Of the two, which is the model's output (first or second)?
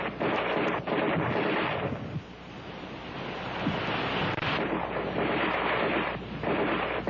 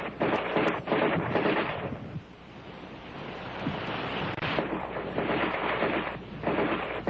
second